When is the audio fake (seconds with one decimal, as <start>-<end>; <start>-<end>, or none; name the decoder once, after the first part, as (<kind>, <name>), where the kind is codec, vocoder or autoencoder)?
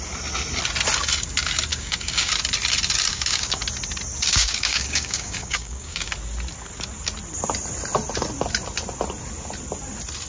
1.7-2.3 (codec, DAC); 3.1-3.6; 4.3-6.1